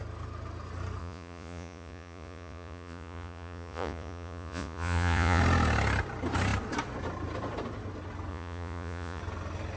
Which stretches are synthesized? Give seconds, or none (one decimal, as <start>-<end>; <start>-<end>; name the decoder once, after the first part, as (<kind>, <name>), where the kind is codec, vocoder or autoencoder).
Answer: 1.0-5.4 (vocoder, Vocos); 8.3-9.2

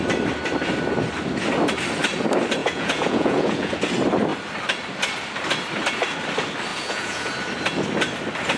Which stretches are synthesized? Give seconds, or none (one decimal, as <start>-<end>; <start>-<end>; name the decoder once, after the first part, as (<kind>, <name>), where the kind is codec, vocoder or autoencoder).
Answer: 2.6-3.7 (vocoder, Vocos); 6.7-7.3

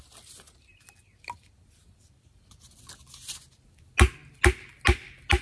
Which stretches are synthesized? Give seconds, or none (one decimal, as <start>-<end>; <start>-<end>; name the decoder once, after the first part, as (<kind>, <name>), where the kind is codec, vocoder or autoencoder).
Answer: none

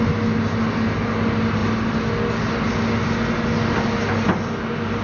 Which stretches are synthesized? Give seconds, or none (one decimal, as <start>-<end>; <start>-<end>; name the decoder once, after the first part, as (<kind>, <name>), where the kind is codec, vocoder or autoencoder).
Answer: none

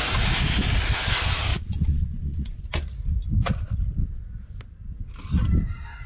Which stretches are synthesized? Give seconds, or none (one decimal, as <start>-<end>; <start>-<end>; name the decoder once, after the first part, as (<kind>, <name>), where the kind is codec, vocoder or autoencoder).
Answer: 1.5-2.6 (vocoder, Vocos)

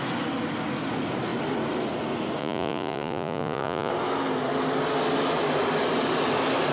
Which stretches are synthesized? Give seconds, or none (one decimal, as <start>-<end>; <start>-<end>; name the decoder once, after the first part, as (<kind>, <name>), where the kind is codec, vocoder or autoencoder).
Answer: 2.4-3.9 (vocoder, Vocos)

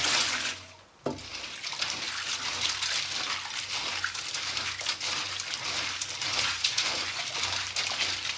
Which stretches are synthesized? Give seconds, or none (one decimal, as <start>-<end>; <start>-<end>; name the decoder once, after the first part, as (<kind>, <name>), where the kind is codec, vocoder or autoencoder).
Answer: 0.0-0.9 (vocoder, Vocos); 6.3-7.2